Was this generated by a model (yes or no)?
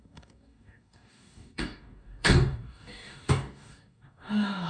yes